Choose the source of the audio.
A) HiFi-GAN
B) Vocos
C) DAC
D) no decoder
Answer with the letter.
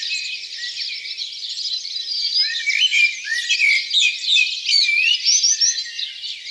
D